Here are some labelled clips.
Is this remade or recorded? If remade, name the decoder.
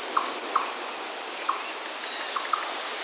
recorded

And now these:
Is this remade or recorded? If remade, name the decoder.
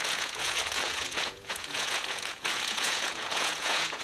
remade, vocoder, Vocos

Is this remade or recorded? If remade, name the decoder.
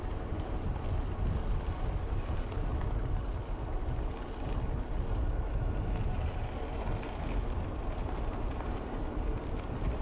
recorded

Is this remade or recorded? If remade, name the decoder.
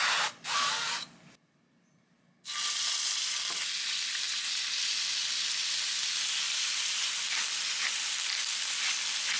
recorded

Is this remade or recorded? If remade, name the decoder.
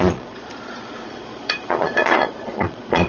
remade, vocoder, Vocos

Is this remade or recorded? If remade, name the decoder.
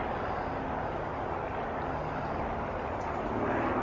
recorded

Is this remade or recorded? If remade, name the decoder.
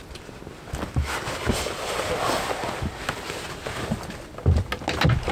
recorded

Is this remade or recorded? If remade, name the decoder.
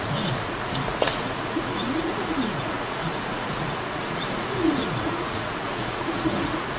remade, vocoder, Vocos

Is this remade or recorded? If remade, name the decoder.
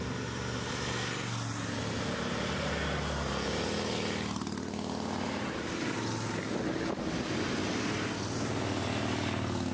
recorded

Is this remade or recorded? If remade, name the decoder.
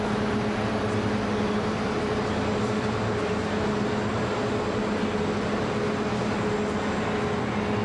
recorded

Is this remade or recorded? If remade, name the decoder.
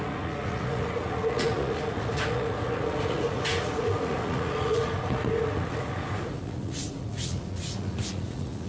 remade, vocoder, Vocos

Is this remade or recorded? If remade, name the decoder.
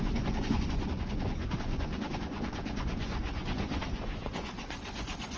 remade, vocoder, Vocos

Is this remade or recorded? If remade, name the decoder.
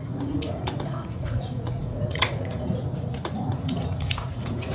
remade, vocoder, Vocos